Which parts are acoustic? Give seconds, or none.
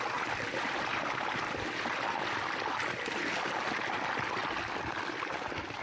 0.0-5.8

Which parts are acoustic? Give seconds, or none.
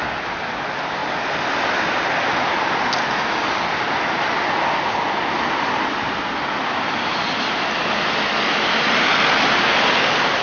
0.0-10.4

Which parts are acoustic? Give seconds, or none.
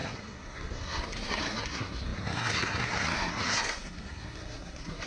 none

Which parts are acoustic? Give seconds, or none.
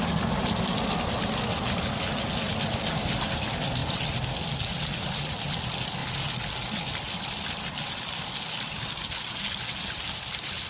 0.0-10.7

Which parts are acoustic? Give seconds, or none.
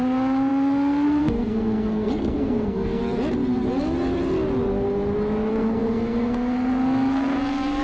3.0-5.5